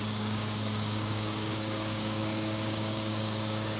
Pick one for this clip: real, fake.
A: fake